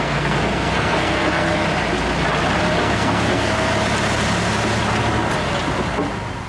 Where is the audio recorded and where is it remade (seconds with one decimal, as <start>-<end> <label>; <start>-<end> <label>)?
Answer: 0.0-1.6 remade; 1.6-2.8 recorded; 2.8-3.7 remade; 3.7-6.5 recorded